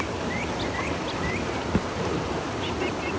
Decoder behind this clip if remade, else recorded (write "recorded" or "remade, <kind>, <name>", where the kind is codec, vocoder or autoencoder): recorded